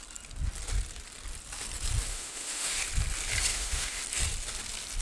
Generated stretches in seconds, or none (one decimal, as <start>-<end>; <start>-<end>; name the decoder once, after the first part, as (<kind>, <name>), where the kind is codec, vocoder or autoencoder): 2.1-2.8 (autoencoder, DAC-VAE); 3.5-4.0